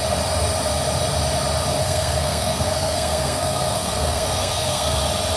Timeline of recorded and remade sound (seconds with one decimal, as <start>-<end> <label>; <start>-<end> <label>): 0.0-1.8 recorded; 1.8-5.0 remade; 5.0-5.4 recorded